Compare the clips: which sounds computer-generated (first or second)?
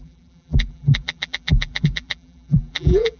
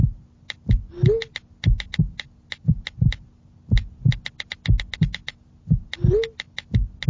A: first